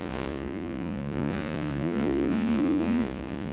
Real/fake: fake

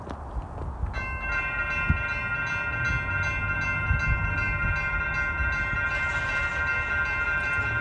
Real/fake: real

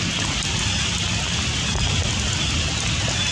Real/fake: real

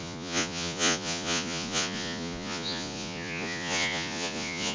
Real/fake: fake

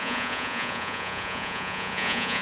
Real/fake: fake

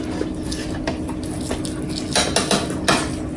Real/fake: real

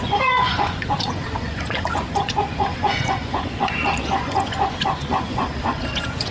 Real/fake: fake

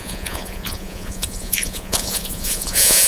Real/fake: fake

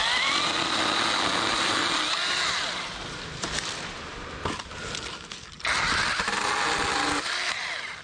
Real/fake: real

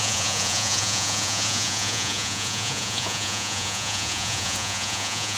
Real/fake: fake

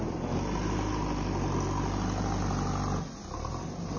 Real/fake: real